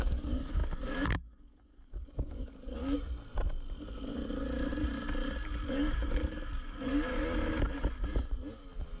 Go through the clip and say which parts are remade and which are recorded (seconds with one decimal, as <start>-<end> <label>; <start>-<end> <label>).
0.0-2.8 remade; 2.8-5.7 recorded; 5.7-6.9 remade; 6.9-9.0 recorded